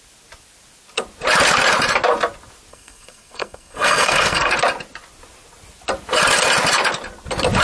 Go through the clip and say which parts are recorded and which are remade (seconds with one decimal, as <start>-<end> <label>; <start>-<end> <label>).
0.0-2.7 recorded; 2.7-4.5 remade; 4.5-7.6 recorded